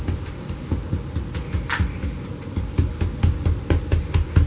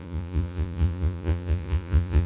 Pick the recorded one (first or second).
first